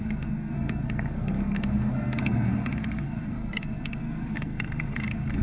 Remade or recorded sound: remade